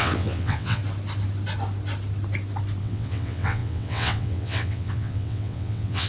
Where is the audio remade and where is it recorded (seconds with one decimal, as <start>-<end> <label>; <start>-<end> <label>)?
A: 0.0-0.8 remade; 0.8-2.8 recorded; 2.8-6.1 remade